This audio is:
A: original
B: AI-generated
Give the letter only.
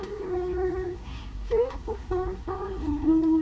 B